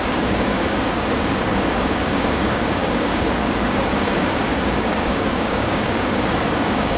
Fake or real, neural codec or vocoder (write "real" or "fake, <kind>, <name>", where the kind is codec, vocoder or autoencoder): fake, codec, DAC